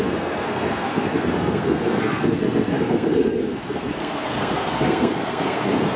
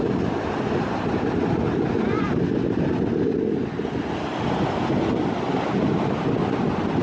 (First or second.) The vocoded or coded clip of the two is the first